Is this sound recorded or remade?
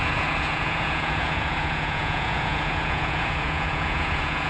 remade